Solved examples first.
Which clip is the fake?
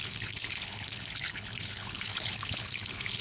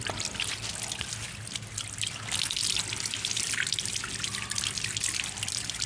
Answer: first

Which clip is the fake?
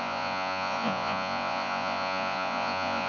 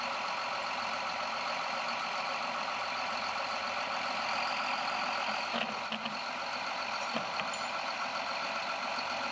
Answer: first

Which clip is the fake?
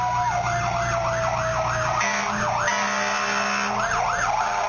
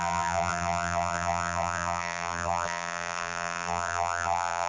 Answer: second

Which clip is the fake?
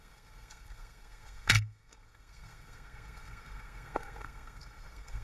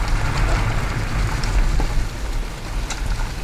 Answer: first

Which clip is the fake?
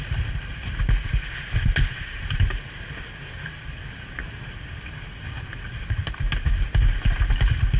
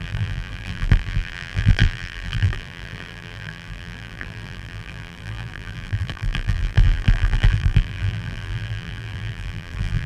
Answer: second